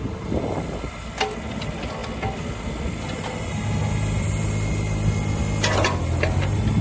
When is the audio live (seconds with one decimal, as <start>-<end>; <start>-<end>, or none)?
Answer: 0.0-6.8